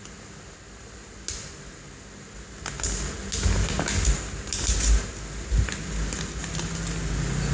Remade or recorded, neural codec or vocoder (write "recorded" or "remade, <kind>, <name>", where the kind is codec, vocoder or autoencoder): recorded